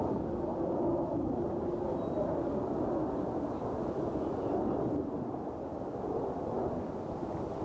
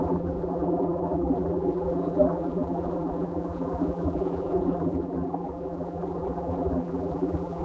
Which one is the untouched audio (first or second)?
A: first